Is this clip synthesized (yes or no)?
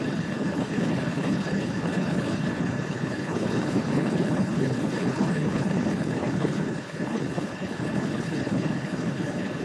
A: yes